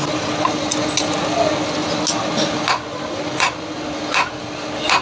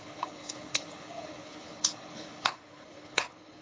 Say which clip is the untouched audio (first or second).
first